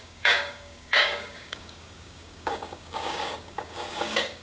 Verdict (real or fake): fake